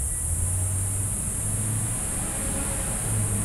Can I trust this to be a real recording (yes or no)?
yes